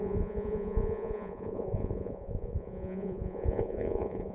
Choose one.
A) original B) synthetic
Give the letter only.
B